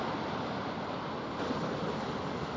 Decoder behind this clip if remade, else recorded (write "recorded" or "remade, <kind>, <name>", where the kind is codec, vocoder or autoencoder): recorded